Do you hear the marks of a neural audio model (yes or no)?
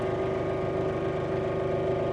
no